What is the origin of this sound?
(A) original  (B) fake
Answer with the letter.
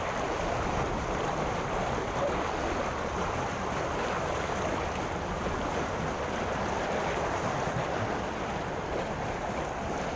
A